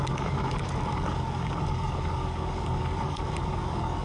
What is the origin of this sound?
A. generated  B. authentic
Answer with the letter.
A